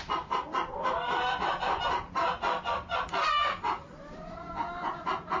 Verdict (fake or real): real